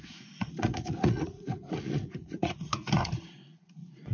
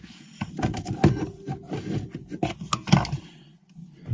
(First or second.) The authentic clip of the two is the second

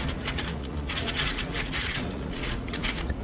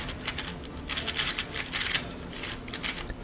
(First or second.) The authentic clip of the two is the second